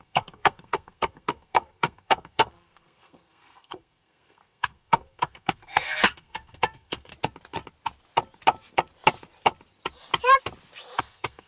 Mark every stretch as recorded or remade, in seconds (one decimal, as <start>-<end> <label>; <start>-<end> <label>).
0.0-7.1 remade; 7.1-11.0 recorded; 11.0-11.5 remade